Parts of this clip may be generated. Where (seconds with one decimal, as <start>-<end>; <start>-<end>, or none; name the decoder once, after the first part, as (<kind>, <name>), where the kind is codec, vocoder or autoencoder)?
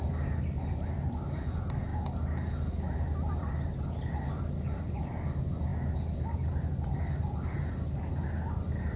none